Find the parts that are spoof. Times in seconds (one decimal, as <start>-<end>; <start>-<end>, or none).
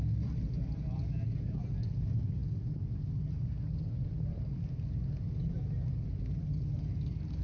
none